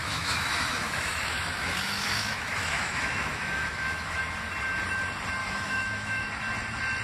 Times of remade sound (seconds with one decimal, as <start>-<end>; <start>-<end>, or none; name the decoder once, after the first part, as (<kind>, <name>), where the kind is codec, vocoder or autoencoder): 0.0-4.2 (autoencoder, DAC-VAE); 5.4-6.3

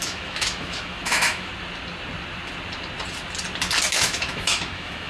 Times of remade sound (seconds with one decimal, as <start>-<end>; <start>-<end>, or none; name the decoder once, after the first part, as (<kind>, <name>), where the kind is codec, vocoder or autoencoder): 0.0-1.5 (autoencoder, DAC-VAE); 3.9-5.1

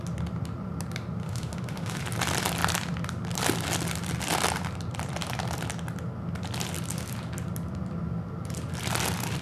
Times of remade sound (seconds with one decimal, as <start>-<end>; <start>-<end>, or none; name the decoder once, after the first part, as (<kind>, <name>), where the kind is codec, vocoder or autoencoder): 1.2-2.0 (autoencoder, DAC-VAE)

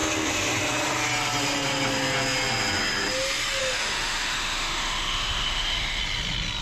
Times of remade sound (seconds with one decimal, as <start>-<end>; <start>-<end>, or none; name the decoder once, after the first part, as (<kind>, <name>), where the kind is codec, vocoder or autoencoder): 3.6-6.0 (autoencoder, DAC-VAE)

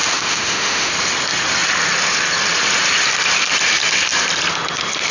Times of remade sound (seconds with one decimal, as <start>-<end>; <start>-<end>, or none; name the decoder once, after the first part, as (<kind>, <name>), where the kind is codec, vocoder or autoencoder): 0.0-0.9 (autoencoder, DAC-VAE)

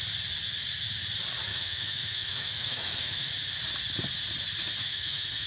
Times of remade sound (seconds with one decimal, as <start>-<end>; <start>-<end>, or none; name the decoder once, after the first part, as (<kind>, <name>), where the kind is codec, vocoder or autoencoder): 1.5-3.3 (autoencoder, DAC-VAE); 4.9-5.5

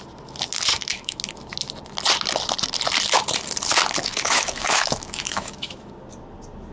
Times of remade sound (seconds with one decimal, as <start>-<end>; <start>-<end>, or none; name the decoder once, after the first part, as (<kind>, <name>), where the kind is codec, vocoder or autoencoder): 0.7-1.2 (autoencoder, DAC-VAE); 4.1-5.9

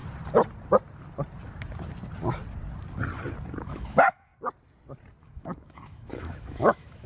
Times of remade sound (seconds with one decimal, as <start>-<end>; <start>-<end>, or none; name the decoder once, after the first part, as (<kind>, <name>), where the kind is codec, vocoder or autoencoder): 3.6-4.3 (autoencoder, DAC-VAE); 5.2-7.1